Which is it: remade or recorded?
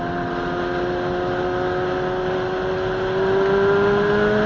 recorded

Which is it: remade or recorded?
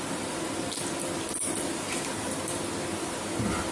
recorded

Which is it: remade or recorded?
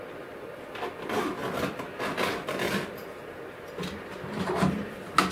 recorded